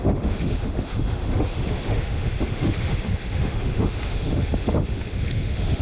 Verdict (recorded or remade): remade